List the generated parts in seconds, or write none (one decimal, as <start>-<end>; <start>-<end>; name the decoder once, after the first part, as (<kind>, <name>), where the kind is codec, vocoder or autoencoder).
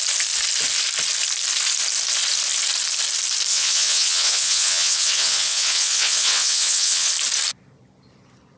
3.5-7.1 (vocoder, WaveNeXt)